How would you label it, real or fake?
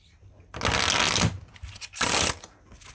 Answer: real